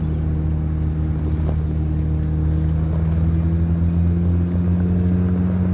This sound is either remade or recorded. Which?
recorded